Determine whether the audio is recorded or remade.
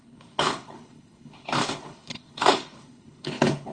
remade